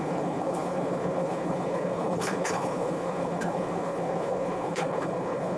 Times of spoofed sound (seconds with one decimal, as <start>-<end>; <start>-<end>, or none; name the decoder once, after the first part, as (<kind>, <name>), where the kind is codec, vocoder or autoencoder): 0.0-5.6 (codec, HILCodec)